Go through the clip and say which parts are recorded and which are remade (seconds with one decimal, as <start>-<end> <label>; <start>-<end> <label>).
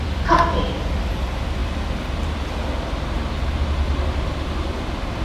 0.0-5.2 recorded